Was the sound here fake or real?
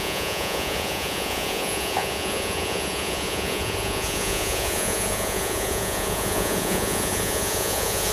fake